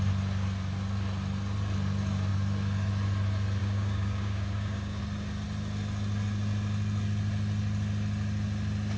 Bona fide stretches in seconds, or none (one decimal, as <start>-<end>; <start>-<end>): 0.0-3.6; 5.0-9.0